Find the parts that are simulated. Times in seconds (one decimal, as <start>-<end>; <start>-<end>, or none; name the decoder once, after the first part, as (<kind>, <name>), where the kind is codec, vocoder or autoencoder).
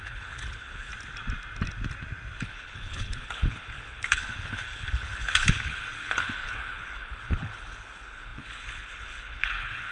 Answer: 0.0-0.9 (codec, HILCodec); 2.4-9.9